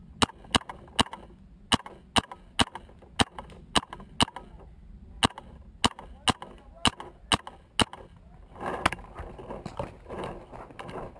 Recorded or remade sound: recorded